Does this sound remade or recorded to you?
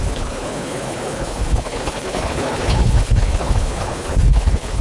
remade